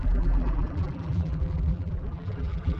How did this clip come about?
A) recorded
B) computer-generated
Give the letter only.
B